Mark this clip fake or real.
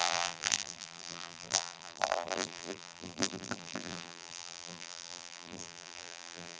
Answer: fake